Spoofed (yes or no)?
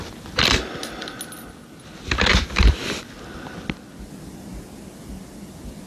no